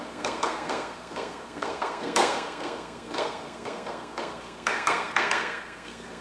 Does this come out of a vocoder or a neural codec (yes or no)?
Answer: yes